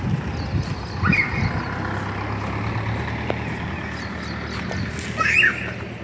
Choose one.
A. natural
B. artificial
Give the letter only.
A